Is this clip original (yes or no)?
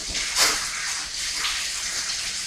yes